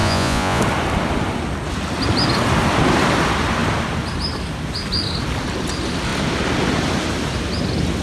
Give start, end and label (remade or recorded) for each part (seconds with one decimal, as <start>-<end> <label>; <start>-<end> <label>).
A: 0.0-0.6 remade; 0.6-8.0 recorded